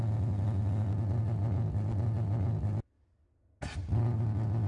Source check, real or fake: real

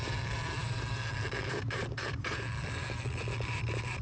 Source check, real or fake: fake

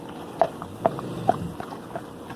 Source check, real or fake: real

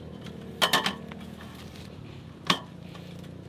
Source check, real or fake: real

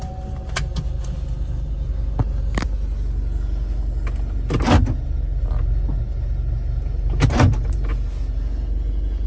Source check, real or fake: real